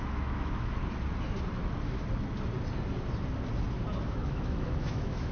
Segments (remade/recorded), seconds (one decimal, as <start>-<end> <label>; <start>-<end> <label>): 0.0-0.8 remade; 0.8-4.0 recorded; 4.0-5.3 remade